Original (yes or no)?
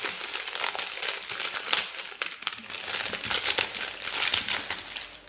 yes